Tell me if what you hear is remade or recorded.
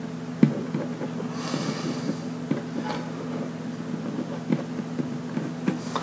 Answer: recorded